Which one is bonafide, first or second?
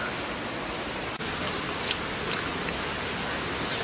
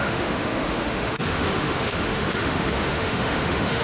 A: first